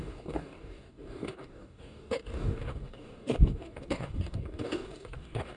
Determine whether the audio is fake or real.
fake